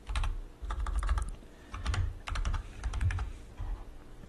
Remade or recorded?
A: recorded